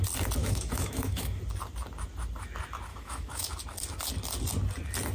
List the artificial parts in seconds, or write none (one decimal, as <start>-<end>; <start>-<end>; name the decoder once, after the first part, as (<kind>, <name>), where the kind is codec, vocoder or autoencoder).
0.4-1.4 (autoencoder, DAC-VAE); 2.9-3.5